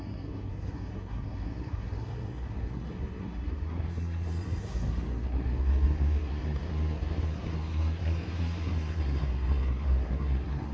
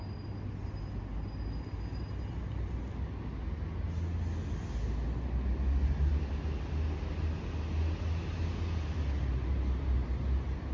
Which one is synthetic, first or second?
first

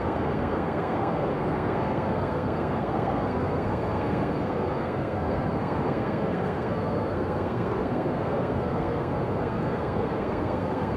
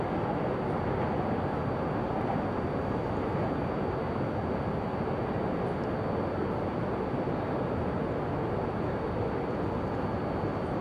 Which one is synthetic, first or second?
first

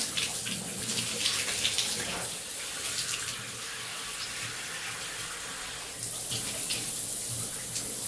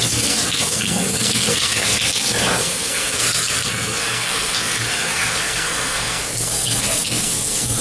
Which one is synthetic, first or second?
second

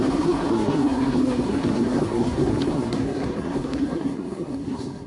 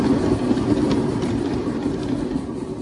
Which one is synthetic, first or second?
first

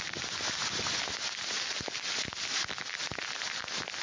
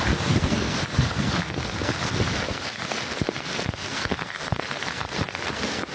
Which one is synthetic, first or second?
second